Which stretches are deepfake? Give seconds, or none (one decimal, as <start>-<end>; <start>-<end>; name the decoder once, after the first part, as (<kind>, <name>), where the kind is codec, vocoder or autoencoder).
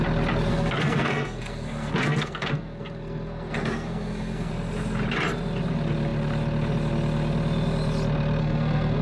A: 0.5-4.5 (codec, SNAC); 8.4-9.0